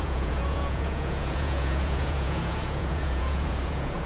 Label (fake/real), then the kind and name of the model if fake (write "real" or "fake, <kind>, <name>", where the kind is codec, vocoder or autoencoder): fake, vocoder, Vocos